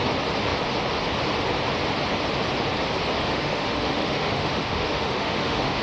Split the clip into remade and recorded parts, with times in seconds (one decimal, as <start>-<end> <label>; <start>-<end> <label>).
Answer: 0.0-3.2 recorded; 3.2-5.8 remade